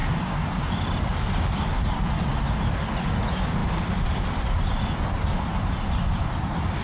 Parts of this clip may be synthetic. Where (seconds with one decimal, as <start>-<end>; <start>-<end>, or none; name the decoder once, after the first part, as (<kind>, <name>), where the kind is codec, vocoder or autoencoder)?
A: none